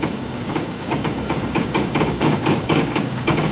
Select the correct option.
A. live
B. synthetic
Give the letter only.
B